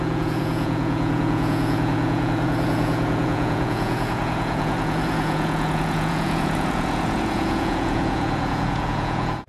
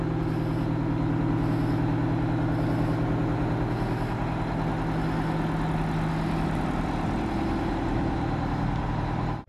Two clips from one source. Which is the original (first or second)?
second